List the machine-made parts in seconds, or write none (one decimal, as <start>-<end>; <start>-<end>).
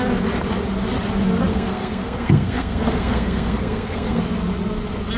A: 1.5-4.2